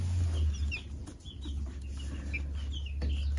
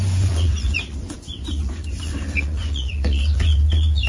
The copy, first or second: second